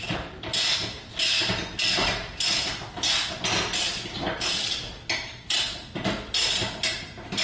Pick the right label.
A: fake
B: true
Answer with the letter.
B